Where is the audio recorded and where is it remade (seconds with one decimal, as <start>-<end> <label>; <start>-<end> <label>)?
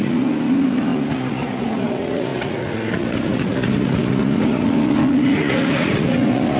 0.0-6.6 remade